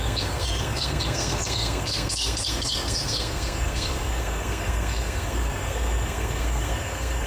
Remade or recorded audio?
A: remade